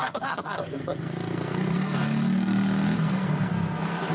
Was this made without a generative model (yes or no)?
no